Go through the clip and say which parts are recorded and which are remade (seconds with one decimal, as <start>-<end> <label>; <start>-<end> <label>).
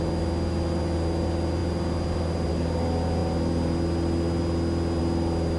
0.0-5.6 recorded